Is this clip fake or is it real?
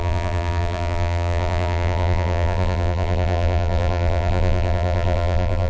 fake